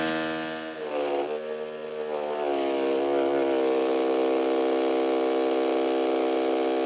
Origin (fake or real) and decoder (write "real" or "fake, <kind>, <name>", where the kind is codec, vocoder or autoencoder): real